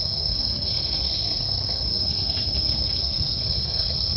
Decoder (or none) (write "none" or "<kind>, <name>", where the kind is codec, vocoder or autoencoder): codec, SNAC